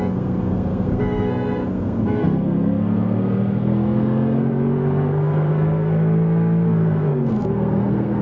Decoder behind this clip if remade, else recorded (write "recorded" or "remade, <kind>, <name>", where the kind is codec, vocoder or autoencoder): remade, codec, SNAC